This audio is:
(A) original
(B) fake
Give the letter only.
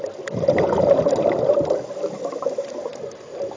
A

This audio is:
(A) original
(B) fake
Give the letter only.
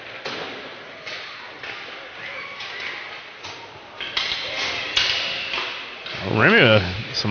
A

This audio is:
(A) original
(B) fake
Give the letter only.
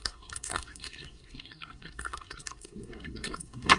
B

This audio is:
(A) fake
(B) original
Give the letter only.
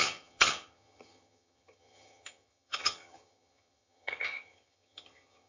A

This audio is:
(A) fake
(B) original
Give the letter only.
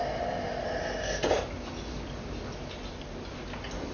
B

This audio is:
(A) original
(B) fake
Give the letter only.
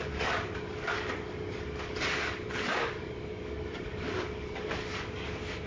B